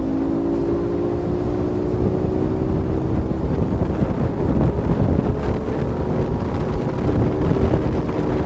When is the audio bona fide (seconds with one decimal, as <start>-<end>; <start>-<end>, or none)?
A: 0.0-8.5